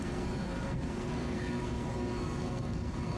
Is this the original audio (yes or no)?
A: no